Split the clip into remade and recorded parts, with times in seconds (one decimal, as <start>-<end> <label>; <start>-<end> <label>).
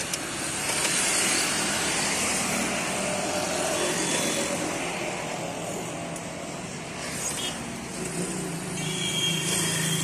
0.0-1.1 recorded; 1.1-2.4 remade; 2.4-10.0 recorded